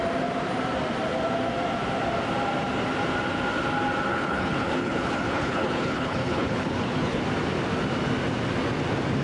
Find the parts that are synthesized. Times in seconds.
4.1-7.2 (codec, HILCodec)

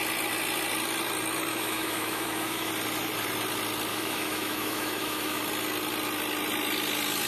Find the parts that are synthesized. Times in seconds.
1.5-2.7 (autoencoder, DAC-VAE); 3.9-5.4

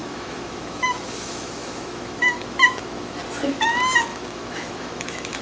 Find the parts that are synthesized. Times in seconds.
0.0-3.2 (autoencoder, DAC-VAE); 4.1-5.4

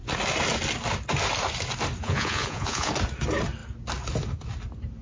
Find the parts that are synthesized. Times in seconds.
2.0-2.9 (vocoder, Vocos)

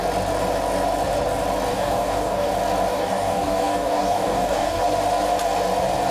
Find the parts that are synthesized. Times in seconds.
1.7-2.5 (codec, DAC); 2.9-4.8